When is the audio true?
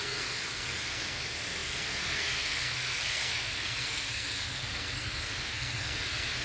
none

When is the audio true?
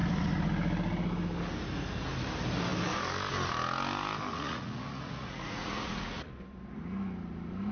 0.0-4.3; 6.3-7.7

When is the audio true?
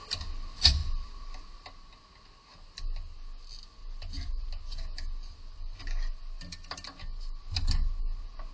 0.0-8.5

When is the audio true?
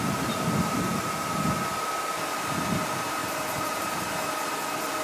0.0-3.2; 4.3-5.0